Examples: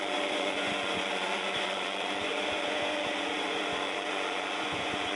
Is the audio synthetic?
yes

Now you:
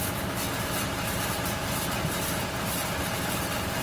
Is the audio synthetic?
no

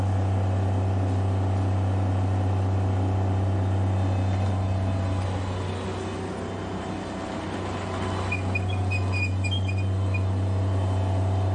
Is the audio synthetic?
no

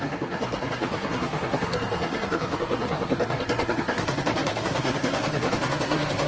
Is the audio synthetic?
yes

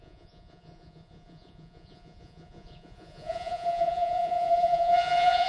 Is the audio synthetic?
yes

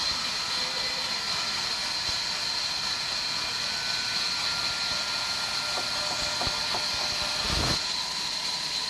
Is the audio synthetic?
no